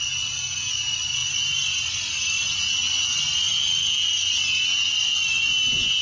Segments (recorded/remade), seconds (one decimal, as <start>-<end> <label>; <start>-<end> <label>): 0.0-6.0 recorded